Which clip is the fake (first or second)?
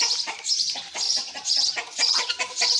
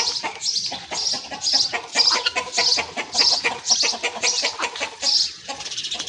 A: first